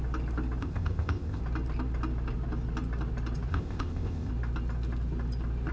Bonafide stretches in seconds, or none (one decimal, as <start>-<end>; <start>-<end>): 0.0-0.6; 1.4-3.5; 4.3-5.7